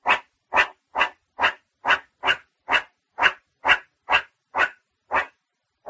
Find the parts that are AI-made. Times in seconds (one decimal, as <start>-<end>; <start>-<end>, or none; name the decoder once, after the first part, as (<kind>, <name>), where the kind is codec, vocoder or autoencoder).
none

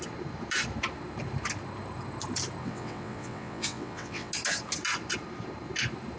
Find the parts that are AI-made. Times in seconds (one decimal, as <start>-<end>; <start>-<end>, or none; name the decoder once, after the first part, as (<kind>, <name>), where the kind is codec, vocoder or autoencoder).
2.6-4.3 (vocoder, WaveNeXt)